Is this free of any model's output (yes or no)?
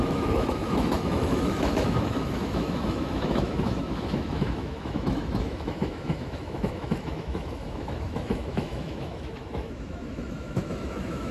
no